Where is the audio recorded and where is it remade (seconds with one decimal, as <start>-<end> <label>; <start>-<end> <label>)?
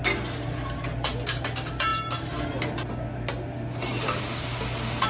0.0-5.1 recorded